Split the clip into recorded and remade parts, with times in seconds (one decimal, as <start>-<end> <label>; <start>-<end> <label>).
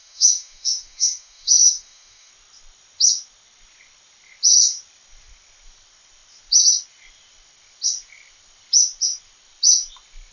0.0-2.3 remade; 2.3-10.3 recorded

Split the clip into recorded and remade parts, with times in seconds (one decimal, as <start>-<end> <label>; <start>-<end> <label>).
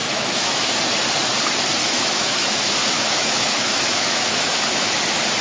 0.0-0.8 remade; 0.8-1.8 recorded; 1.8-5.0 remade; 5.0-5.4 recorded